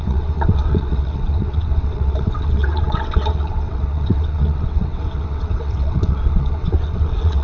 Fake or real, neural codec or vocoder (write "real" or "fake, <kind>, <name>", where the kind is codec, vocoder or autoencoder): fake, vocoder, WaveNeXt